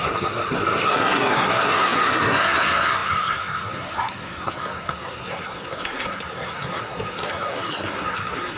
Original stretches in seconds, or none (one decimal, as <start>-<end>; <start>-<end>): none